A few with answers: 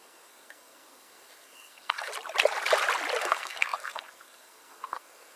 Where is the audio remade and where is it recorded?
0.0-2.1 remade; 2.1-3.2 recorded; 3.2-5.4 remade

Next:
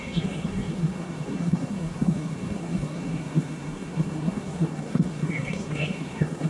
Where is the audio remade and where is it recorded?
0.0-6.5 remade

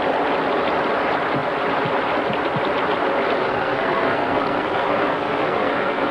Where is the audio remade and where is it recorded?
0.0-3.4 recorded; 3.4-6.1 remade

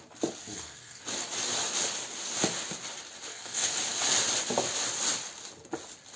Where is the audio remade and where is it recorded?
0.0-0.4 recorded; 0.4-1.0 remade; 1.0-3.3 recorded; 3.3-3.8 remade; 3.8-6.2 recorded

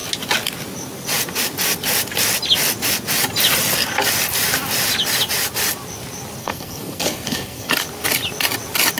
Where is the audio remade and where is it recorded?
0.0-6.4 recorded; 6.4-7.7 remade; 7.7-9.0 recorded